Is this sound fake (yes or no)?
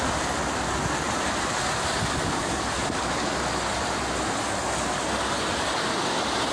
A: no